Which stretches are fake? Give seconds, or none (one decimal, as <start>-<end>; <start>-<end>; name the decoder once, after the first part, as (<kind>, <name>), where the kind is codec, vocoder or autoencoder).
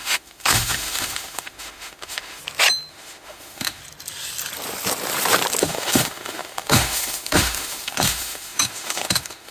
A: 0.0-2.4 (autoencoder, DAC-VAE); 2.9-3.8; 5.6-9.5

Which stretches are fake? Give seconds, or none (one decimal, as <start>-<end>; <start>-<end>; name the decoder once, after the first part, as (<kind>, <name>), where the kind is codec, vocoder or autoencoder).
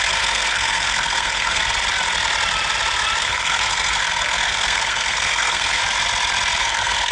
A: 0.0-1.6 (codec, SNAC); 3.2-5.8; 6.6-7.1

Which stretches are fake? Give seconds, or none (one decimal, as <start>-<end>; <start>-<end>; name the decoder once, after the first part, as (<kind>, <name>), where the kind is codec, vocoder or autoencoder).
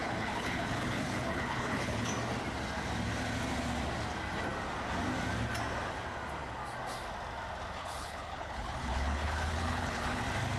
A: 0.0-2.1 (codec, HILCodec); 7.8-10.2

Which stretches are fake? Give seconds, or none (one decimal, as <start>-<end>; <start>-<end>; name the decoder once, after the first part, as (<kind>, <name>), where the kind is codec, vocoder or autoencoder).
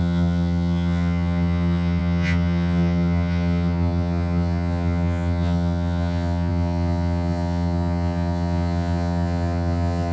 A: 0.0-10.1 (vocoder, HiFi-GAN)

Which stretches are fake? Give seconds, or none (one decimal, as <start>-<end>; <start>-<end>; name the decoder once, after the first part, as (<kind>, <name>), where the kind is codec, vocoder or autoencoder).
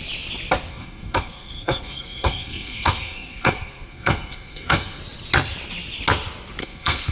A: 0.7-5.0 (codec, SNAC); 6.6-7.1